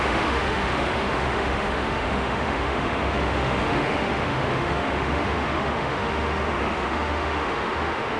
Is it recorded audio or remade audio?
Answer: remade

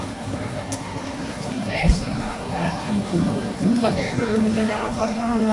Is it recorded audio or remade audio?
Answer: remade